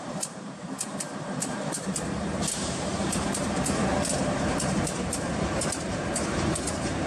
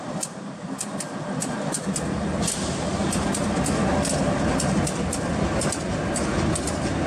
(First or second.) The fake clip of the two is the first